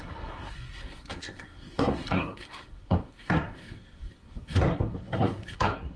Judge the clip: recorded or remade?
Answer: remade